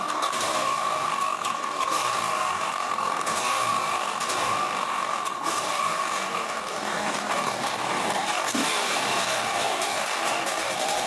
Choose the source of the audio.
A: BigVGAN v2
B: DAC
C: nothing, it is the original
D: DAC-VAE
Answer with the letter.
B